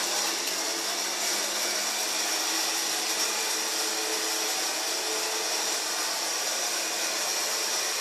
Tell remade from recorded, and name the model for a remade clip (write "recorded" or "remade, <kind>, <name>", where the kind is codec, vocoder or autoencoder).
recorded